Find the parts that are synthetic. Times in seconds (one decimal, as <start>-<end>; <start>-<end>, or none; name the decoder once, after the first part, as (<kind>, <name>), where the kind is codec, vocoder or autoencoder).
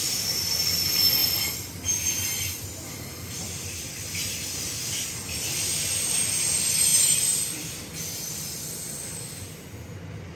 none